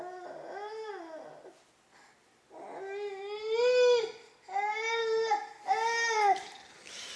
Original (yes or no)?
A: yes